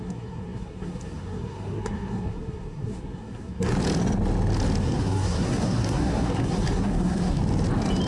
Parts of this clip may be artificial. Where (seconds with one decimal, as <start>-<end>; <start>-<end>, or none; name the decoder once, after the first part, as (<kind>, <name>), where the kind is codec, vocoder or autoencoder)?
0.0-3.7 (codec, SNAC); 4.8-7.4